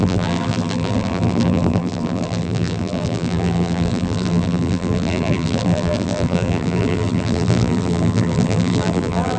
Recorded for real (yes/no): no